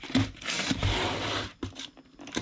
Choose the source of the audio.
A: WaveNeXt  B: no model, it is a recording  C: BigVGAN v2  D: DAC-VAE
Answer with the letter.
B